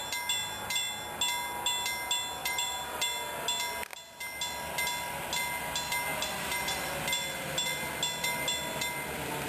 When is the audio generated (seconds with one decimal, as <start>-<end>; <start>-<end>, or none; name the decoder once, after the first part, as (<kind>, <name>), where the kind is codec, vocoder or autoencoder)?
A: 2.4-2.9 (vocoder, BigVGAN v2); 6.1-6.9